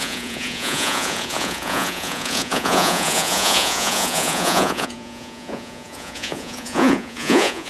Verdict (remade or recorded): remade